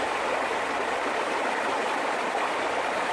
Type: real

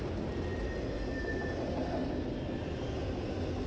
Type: real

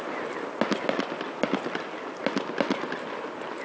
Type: real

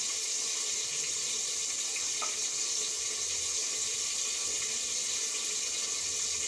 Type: real